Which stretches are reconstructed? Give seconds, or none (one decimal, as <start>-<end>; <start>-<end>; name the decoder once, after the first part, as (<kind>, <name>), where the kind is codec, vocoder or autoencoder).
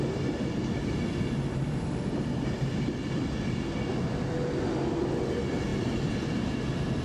none